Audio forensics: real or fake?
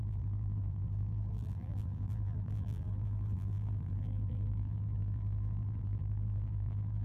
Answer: fake